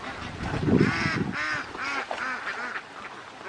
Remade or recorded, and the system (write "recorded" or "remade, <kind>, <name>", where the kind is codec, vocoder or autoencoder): recorded